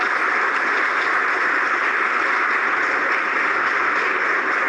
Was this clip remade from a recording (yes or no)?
no